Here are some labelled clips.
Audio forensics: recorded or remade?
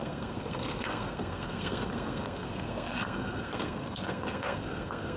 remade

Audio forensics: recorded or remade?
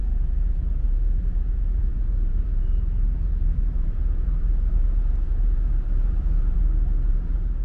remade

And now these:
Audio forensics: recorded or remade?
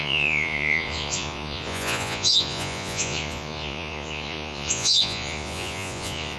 remade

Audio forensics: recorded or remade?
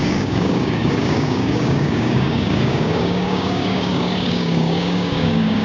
remade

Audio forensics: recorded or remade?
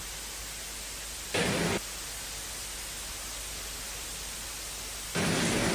recorded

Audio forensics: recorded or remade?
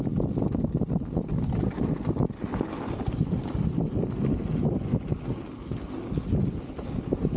recorded